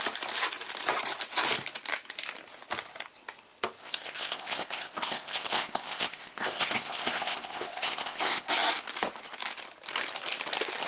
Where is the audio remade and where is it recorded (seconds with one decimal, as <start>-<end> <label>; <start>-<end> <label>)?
0.0-3.8 recorded; 3.8-8.5 remade; 8.5-10.9 recorded